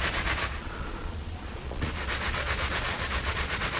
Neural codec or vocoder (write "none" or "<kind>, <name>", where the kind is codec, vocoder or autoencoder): vocoder, Vocos